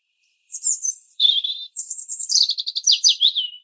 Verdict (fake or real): fake